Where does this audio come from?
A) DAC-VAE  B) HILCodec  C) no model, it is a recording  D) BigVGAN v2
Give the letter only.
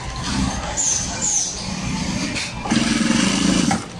C